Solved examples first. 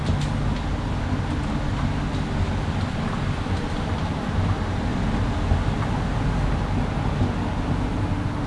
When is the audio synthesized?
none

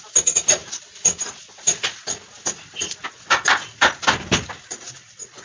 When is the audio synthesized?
none

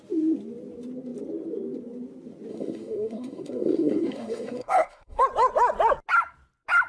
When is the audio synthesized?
2.5-5.2 (codec, SNAC)

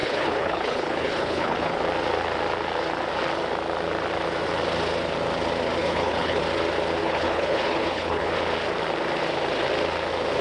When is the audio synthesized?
0.0-1.8 (codec, HILCodec); 5.8-6.4; 7.0-8.2

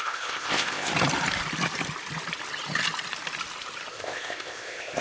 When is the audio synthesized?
0.0-0.9 (codec, ZipCodec); 3.9-5.0